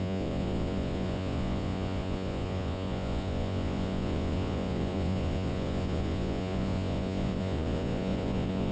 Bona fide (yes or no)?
no